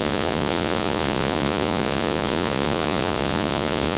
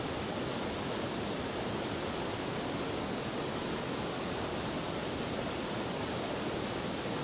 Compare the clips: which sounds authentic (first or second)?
second